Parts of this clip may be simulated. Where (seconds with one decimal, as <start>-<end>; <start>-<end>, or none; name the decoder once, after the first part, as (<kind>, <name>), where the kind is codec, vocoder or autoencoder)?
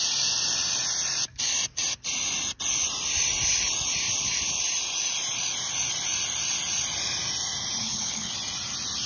7.8-8.3 (codec, HILCodec)